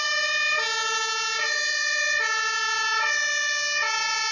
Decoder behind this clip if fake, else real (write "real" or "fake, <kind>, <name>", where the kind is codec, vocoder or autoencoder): real